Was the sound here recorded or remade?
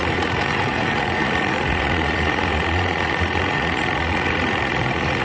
remade